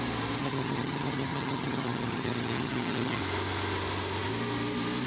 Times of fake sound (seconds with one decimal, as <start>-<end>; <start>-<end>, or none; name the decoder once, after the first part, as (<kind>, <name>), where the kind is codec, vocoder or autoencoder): 0.4-3.2 (vocoder, HiFi-GAN)